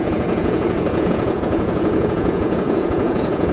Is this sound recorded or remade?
remade